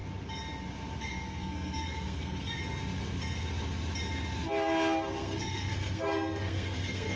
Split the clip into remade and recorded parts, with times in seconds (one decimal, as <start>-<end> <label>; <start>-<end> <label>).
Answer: 0.0-1.0 recorded; 1.0-2.6 remade; 2.6-5.1 recorded; 5.1-7.2 remade